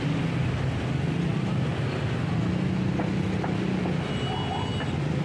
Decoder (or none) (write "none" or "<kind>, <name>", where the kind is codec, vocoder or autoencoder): none